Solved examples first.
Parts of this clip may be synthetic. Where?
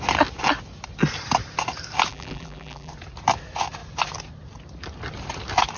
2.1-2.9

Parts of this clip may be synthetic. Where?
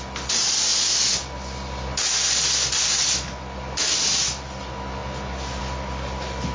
none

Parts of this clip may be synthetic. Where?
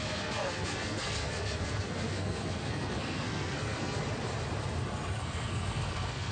0.0-4.0; 5.2-6.3